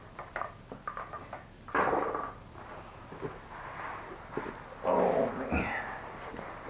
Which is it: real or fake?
real